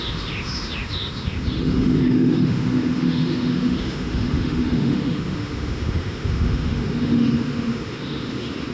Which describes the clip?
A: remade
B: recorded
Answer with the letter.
A